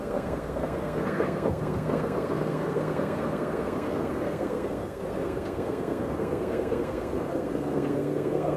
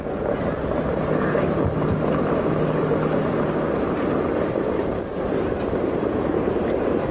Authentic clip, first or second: second